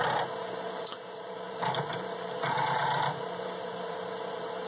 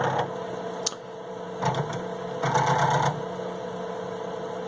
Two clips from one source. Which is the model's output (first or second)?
first